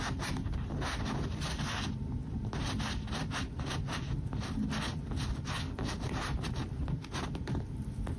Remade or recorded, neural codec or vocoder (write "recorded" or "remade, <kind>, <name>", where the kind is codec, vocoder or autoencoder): recorded